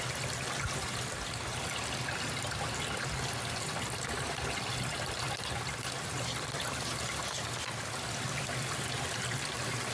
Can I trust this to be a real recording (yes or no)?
yes